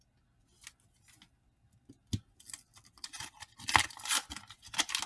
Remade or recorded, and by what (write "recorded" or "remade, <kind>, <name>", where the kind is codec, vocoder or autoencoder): recorded